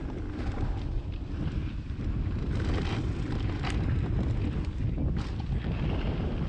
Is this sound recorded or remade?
recorded